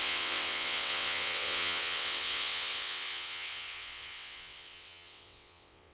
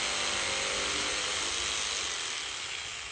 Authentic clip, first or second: second